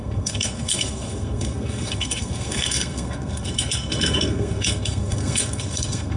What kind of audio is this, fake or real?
fake